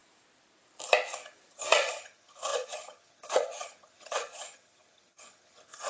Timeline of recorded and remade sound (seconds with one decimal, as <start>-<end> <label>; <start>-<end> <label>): 0.0-1.5 recorded; 1.5-5.9 remade